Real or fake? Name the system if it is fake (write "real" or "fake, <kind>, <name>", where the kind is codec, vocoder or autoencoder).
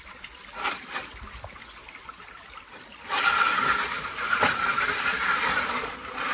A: real